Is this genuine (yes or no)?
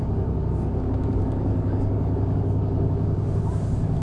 no